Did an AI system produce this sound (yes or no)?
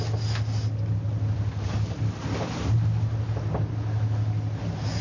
no